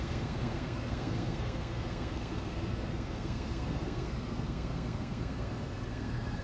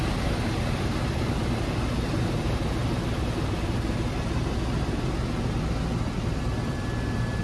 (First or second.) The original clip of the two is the second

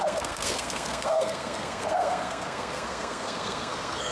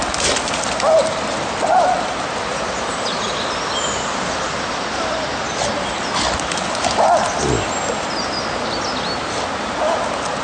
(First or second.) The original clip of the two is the second